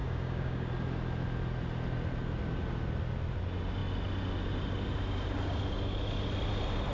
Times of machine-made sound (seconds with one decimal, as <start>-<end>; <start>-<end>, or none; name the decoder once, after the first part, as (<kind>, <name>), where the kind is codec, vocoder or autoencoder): 0.0-0.7 (codec, DAC)